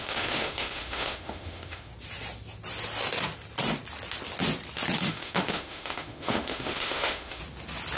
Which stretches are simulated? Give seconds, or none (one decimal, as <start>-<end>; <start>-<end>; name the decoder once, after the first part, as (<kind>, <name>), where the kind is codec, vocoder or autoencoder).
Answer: 0.0-1.9 (autoencoder, DAC-VAE); 5.1-7.4